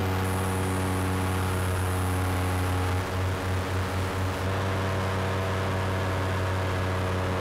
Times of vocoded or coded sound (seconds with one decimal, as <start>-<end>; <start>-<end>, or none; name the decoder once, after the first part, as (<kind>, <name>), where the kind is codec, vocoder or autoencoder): none